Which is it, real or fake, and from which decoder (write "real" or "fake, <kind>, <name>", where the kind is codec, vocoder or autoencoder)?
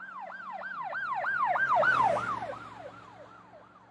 real